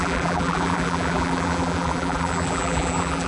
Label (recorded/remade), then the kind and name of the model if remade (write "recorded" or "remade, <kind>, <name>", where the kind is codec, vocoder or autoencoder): remade, vocoder, BigVGAN v2